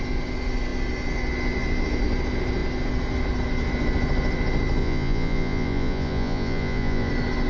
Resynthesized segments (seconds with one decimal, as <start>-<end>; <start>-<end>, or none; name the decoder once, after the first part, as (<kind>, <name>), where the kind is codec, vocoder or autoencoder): 4.8-7.1 (vocoder, Vocos)